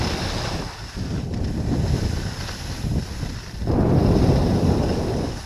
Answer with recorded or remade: recorded